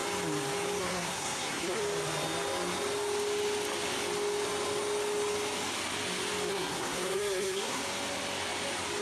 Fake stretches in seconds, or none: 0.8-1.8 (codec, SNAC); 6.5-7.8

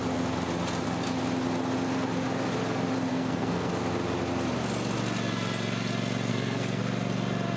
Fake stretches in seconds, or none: 3.1-3.7 (codec, SNAC); 6.3-6.8

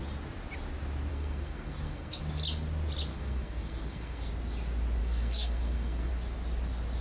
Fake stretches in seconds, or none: 1.1-2.2 (codec, SNAC); 3.1-4.3; 5.0-6.1

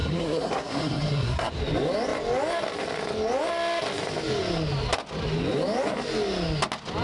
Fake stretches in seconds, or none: 0.0-1.5 (codec, SNAC)

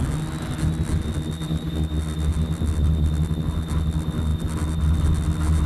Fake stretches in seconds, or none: none

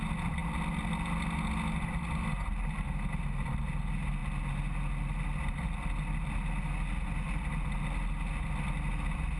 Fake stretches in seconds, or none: none

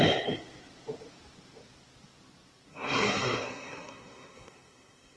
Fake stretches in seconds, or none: 2.7-5.2 (codec, SNAC)

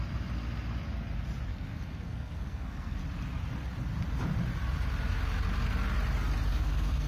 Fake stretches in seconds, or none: 1.5-3.0 (codec, SNAC); 6.5-7.1